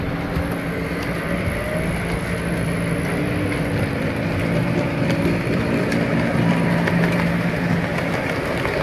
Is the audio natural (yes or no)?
yes